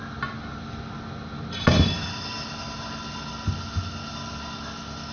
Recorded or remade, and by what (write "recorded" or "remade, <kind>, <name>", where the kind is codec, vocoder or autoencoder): recorded